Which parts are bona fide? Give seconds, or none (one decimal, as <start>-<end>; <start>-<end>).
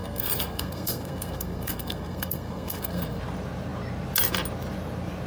3.2-5.3